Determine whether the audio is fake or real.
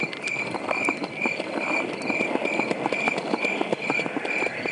real